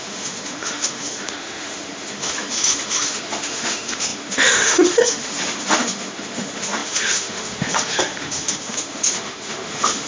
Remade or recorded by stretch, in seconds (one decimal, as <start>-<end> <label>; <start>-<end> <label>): 0.0-10.1 remade